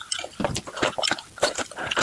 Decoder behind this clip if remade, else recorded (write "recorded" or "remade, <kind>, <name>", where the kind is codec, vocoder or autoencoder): recorded